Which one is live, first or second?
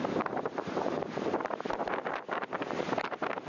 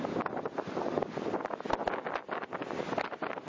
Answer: second